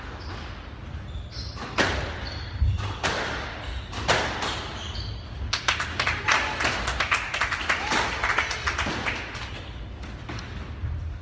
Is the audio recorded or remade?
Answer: recorded